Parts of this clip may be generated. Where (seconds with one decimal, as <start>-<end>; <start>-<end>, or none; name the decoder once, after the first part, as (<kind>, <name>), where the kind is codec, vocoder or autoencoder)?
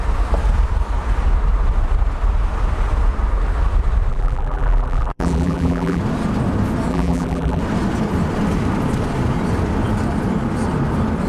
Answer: 4.1-6.0 (vocoder, BigVGAN v2); 6.9-7.6